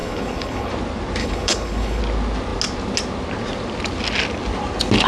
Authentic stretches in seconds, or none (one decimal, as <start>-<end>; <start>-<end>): 0.7-1.2; 2.0-5.1